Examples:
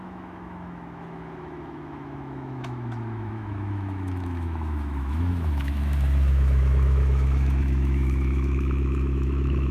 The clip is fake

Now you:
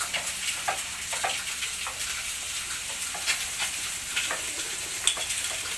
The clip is real